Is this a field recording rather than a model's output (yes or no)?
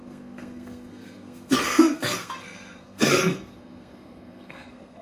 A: no